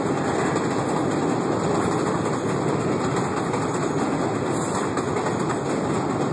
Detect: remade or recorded recorded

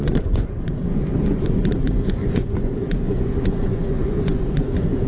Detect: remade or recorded remade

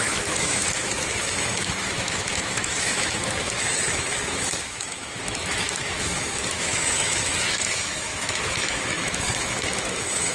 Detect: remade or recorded remade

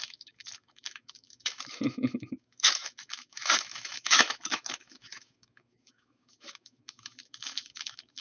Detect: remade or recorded remade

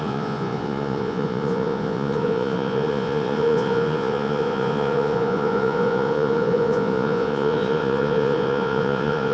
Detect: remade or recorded remade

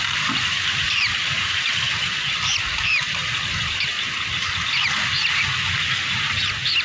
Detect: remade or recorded recorded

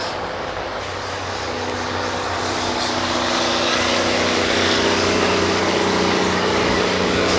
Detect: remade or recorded remade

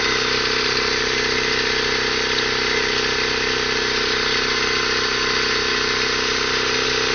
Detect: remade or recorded recorded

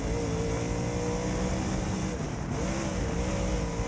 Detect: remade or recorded recorded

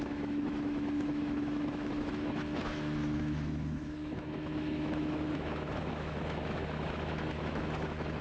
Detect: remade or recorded remade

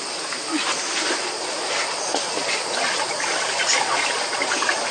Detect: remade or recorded remade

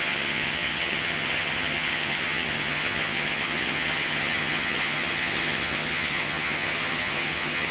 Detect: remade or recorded remade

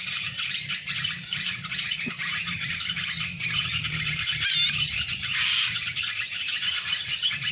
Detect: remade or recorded remade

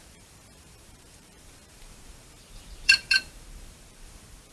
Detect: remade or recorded remade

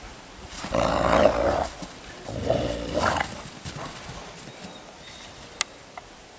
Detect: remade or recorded recorded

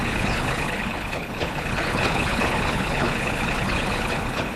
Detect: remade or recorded remade